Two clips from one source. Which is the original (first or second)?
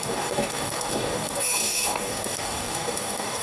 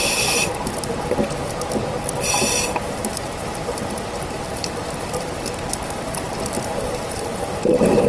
second